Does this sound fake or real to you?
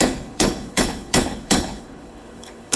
fake